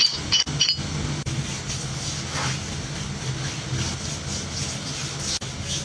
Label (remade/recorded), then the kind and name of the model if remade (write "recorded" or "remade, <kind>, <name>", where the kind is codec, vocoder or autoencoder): recorded